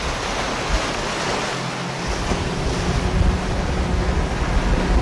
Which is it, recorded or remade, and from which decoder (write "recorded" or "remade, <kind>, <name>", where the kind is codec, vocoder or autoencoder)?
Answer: recorded